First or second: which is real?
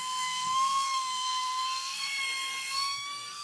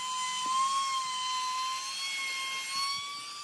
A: second